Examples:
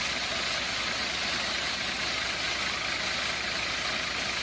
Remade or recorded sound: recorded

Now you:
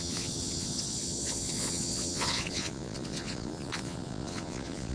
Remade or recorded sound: remade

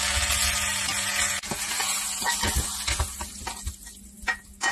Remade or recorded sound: recorded